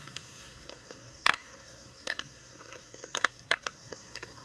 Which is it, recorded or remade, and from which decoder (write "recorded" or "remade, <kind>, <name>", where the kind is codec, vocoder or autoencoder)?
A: remade, codec, SNAC